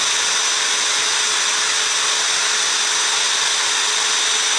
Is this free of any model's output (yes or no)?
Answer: yes